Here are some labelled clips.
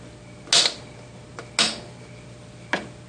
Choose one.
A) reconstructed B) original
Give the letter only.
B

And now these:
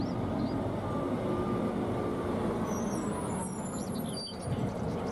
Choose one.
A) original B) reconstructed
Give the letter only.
A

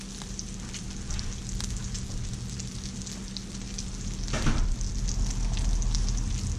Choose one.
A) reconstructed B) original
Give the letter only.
B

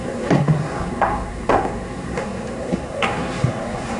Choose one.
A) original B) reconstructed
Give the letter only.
B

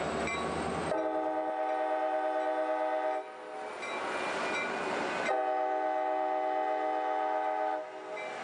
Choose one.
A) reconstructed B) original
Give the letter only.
B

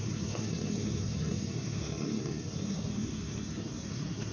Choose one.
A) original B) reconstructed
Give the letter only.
B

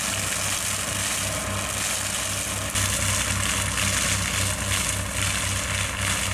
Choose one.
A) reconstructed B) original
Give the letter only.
B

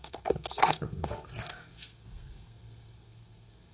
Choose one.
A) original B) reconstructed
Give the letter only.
B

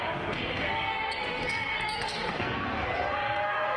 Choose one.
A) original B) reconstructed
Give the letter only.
B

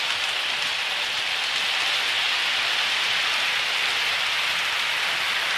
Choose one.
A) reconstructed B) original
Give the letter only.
B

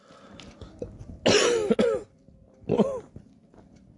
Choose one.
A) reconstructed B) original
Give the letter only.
B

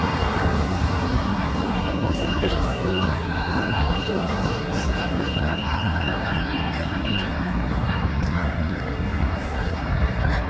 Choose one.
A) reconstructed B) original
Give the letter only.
A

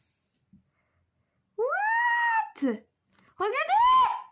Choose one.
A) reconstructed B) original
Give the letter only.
B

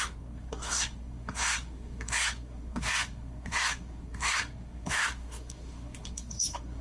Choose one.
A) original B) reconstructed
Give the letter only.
B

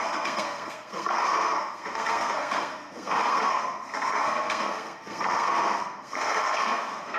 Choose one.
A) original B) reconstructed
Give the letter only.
B